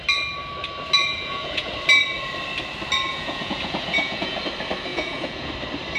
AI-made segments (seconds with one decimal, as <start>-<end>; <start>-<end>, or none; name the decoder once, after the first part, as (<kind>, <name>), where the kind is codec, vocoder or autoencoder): 1.0-1.7 (vocoder, Vocos); 3.1-4.4; 4.9-5.5